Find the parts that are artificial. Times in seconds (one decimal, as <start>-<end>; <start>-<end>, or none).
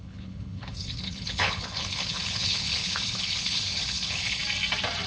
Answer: 0.0-4.4